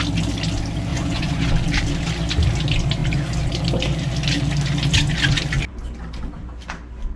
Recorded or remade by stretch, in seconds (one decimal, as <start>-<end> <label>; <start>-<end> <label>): 0.0-0.9 recorded; 0.9-1.5 remade; 1.5-7.2 recorded